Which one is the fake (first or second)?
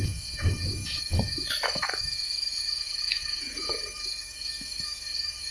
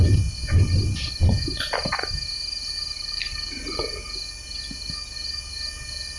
first